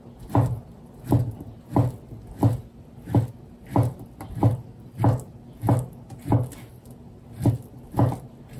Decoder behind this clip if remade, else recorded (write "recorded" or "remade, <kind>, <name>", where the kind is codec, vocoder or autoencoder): recorded